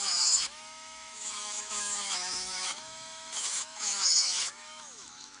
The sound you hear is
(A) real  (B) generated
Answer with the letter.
B